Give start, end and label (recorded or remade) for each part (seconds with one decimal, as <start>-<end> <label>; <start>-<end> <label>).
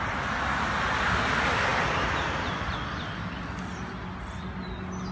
0.0-5.1 recorded